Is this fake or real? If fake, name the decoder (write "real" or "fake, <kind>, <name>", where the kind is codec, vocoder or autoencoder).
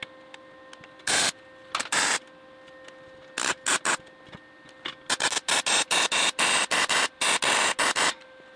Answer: real